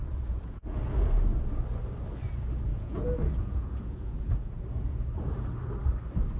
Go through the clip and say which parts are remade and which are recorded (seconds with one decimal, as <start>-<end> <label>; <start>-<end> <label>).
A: 0.0-0.8 remade; 0.8-2.7 recorded; 2.7-4.9 remade; 4.9-6.4 recorded